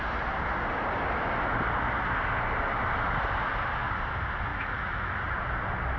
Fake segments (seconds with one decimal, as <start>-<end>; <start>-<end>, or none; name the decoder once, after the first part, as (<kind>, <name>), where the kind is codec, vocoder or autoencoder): 4.5-5.1 (autoencoder, DAC-VAE)